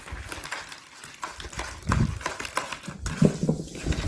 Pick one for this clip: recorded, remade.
recorded